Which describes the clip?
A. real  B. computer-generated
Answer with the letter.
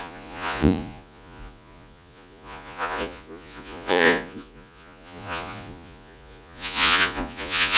B